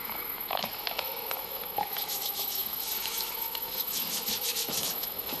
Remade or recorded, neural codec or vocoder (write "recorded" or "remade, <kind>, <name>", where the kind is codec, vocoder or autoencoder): remade, autoencoder, DAC-VAE